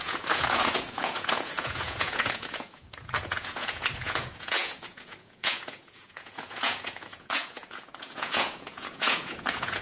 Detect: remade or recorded remade